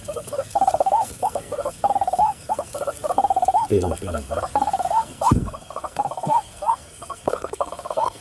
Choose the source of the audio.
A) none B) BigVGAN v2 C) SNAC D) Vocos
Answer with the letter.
C